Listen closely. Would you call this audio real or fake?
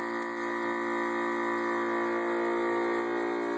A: real